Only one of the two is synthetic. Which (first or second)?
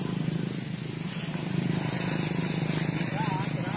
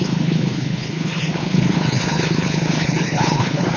second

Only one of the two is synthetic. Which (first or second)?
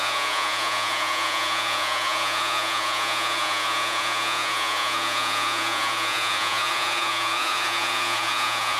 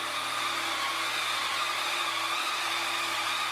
first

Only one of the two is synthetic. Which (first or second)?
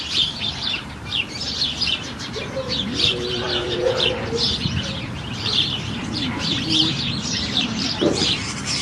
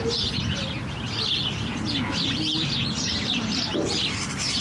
first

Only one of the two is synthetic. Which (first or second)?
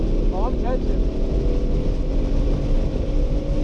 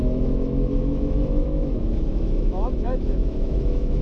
second